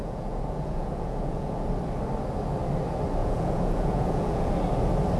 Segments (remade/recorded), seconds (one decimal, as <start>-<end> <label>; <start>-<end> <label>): 0.0-1.7 remade; 1.7-3.2 recorded; 3.2-4.5 remade; 4.5-5.2 recorded